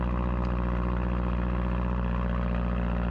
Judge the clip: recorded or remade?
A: recorded